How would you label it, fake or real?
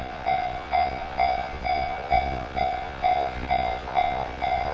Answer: fake